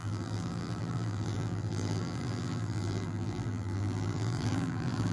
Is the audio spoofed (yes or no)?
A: yes